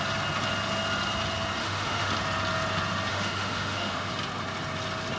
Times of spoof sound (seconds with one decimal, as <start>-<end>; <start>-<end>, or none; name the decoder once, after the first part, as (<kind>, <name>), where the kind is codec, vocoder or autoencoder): 1.6-2.1 (autoencoder, DAC-VAE); 3.1-4.1